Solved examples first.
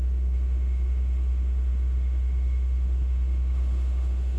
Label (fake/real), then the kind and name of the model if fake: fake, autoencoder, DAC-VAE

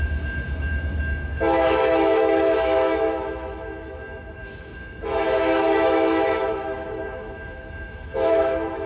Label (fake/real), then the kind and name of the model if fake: fake, autoencoder, DAC-VAE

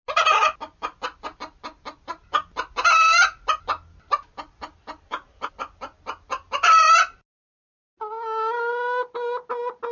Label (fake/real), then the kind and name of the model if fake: real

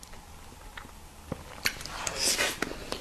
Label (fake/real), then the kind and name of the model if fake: real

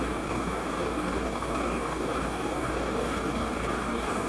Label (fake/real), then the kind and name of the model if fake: fake, codec, DAC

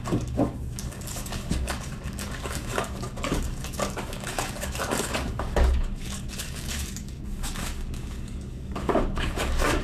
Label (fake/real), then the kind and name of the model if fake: fake, codec, DAC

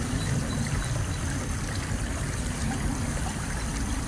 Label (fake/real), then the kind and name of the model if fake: real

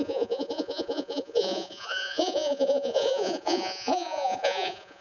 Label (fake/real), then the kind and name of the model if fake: fake, vocoder, Vocos